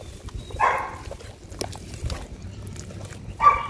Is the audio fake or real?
real